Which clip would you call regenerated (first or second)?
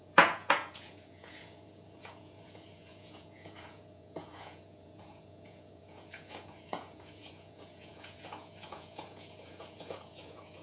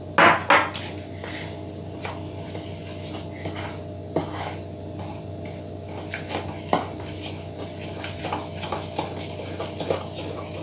first